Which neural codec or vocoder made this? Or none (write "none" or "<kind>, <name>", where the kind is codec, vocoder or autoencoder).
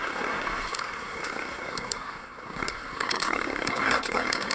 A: codec, SNAC